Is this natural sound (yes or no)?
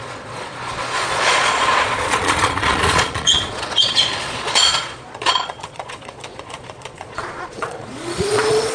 no